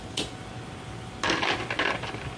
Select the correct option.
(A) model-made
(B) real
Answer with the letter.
B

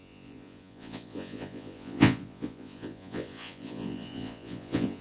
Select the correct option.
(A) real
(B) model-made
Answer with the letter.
B